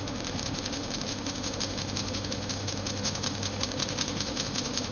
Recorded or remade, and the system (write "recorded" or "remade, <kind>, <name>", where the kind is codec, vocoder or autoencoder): remade, autoencoder, DAC-VAE